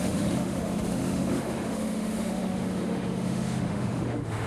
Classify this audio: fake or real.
fake